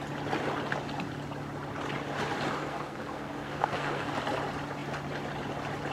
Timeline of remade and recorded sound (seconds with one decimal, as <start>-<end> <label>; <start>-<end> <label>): 0.0-2.6 recorded; 2.6-4.1 remade; 4.1-5.9 recorded